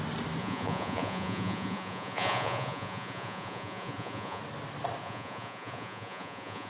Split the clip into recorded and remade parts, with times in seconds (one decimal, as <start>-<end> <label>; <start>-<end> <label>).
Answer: 0.0-0.4 recorded; 0.4-4.4 remade; 4.4-5.0 recorded; 5.0-6.7 remade